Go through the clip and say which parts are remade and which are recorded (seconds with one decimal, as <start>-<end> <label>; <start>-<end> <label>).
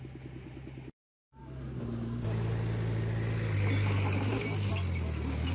0.0-5.5 recorded